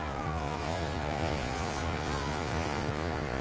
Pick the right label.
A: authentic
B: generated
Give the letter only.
B